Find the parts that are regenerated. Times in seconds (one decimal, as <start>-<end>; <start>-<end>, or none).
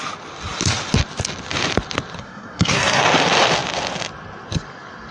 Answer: 2.2-3.0